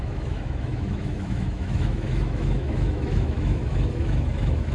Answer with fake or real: fake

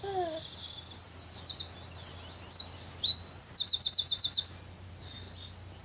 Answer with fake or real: real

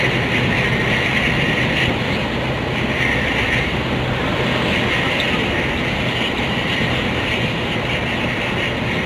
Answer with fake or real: real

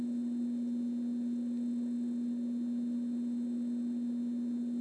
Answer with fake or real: real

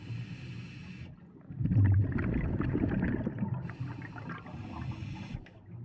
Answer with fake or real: real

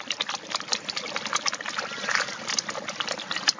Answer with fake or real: real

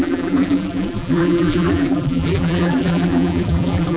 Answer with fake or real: fake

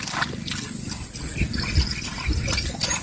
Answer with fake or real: real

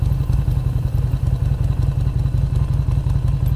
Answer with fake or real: real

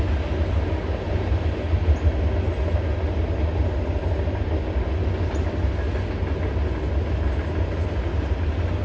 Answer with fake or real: real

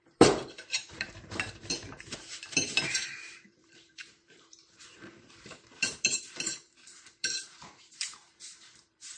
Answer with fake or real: fake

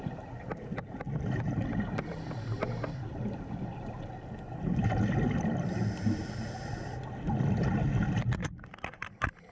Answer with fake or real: real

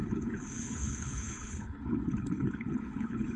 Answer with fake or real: fake